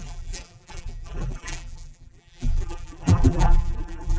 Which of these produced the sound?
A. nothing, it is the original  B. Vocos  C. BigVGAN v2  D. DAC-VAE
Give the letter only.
C